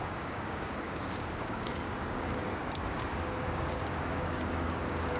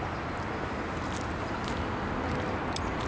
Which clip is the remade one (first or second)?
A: first